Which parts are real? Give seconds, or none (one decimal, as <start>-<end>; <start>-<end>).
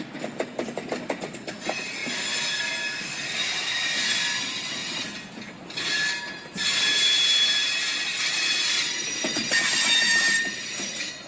2.0-3.0; 4.8-5.9; 9.4-10.1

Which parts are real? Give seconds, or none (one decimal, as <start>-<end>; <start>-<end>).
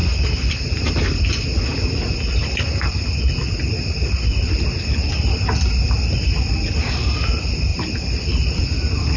0.0-7.7; 8.6-9.2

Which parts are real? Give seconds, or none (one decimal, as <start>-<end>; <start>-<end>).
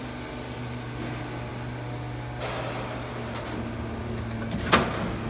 0.0-5.3